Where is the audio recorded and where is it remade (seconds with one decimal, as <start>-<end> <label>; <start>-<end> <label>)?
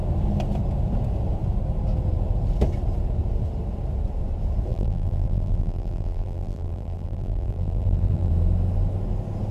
0.0-4.7 recorded; 4.7-8.3 remade; 8.3-9.5 recorded